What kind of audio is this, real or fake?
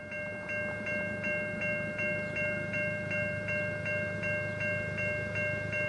real